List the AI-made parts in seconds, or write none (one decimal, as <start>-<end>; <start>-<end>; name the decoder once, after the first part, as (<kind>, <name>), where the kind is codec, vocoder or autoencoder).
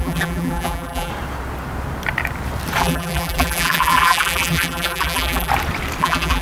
0.0-1.1 (vocoder, BigVGAN v2); 2.8-5.5; 6.0-6.4